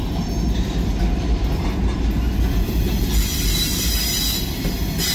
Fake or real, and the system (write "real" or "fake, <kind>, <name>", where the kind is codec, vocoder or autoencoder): real